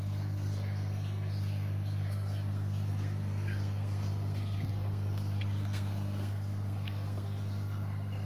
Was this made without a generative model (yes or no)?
no